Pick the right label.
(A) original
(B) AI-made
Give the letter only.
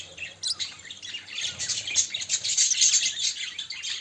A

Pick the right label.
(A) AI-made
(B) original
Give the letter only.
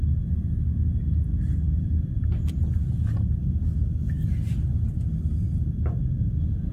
B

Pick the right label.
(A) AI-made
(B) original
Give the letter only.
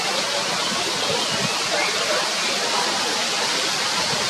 B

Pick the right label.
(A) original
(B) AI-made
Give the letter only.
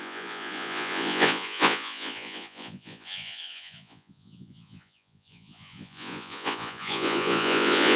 B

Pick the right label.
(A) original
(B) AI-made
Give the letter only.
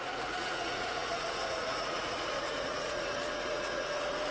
B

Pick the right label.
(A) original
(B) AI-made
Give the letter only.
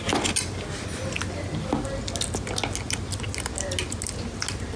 A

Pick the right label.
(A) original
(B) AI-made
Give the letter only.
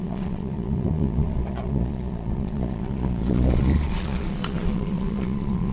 B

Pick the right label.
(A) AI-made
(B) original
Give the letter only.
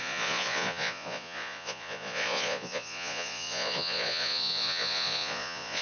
A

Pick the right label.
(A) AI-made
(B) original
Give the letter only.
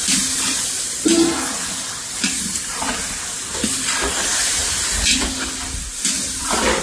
B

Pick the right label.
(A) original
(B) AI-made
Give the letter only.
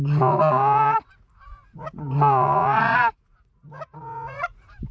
B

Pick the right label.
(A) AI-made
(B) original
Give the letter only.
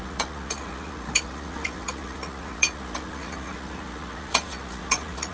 A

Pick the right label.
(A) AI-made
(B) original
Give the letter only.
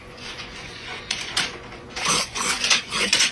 A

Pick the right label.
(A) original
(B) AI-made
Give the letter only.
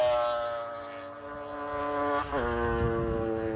A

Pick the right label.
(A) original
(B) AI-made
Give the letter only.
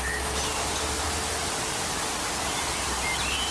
A